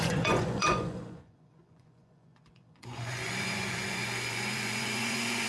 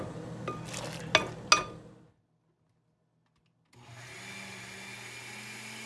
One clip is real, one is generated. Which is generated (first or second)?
first